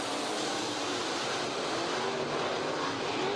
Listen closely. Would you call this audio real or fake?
fake